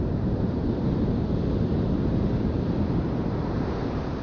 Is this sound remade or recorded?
remade